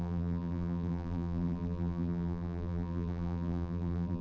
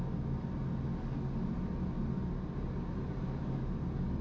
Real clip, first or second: second